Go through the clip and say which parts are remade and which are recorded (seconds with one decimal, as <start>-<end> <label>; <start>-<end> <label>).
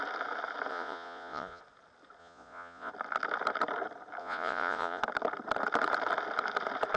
0.0-0.7 recorded; 0.7-1.6 remade; 1.6-2.2 recorded; 2.2-2.9 remade; 2.9-4.2 recorded; 4.2-5.0 remade; 5.0-7.0 recorded